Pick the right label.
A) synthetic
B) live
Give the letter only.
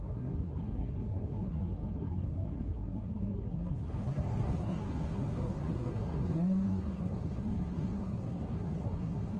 A